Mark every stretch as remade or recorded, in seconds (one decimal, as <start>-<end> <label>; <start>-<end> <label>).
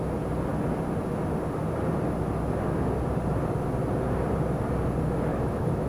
0.0-5.3 recorded; 5.3-5.9 remade